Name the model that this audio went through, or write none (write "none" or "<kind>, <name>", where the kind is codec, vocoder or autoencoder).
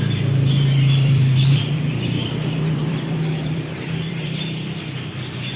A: vocoder, BigVGAN v2